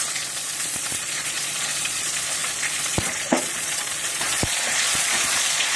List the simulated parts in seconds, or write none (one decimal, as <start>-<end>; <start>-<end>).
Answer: 0.0-5.8